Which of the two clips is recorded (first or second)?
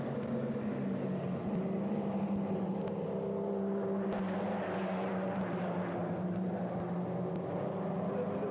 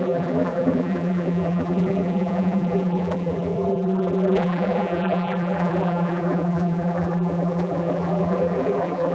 first